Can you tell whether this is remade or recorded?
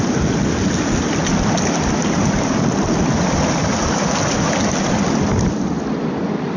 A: recorded